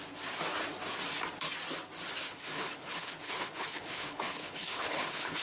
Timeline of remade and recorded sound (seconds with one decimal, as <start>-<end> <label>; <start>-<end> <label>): 0.0-2.2 recorded; 2.2-5.4 remade